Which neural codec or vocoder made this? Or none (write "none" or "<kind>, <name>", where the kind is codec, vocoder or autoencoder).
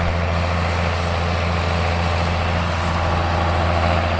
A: none